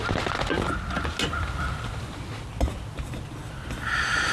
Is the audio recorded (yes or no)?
yes